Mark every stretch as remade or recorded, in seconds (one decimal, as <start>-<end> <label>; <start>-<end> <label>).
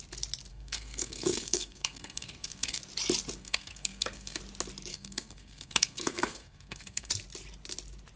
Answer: 0.0-0.5 recorded; 0.5-2.8 remade; 2.8-3.4 recorded; 3.4-4.4 remade; 4.4-4.9 recorded; 4.9-7.1 remade; 7.1-8.2 recorded